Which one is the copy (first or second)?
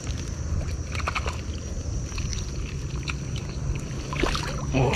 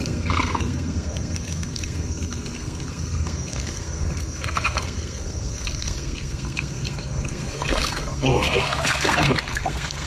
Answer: second